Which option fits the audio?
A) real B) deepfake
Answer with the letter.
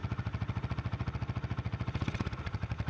A